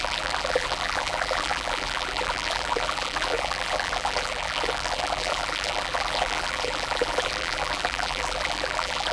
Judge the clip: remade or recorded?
remade